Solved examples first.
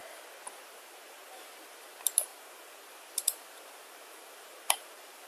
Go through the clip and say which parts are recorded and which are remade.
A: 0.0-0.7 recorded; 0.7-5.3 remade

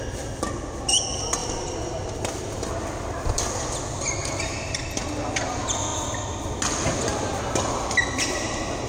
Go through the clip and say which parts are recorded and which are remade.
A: 0.0-8.9 recorded

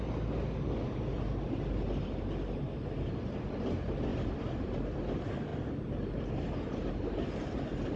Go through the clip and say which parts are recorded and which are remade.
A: 0.0-4.1 recorded; 4.1-5.0 remade; 5.0-8.0 recorded

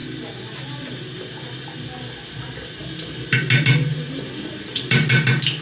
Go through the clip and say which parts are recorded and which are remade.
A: 0.0-3.9 recorded; 3.9-5.1 remade; 5.1-5.6 recorded

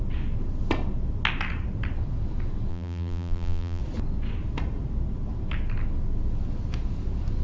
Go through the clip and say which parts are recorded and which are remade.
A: 0.0-2.7 recorded; 2.7-3.8 remade; 3.8-7.4 recorded

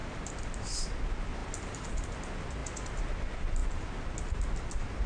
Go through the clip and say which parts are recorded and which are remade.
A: 0.0-5.1 recorded